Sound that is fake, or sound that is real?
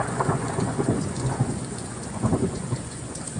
fake